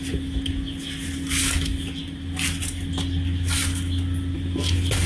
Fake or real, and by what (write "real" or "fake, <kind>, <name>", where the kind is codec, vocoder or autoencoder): real